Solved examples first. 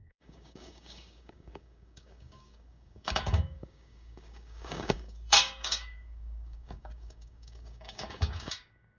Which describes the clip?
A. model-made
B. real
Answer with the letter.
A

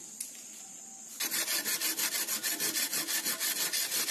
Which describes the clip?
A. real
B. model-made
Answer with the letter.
A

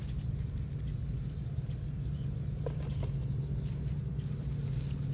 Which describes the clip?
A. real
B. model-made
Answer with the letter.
A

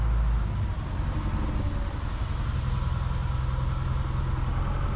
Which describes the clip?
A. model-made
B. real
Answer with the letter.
B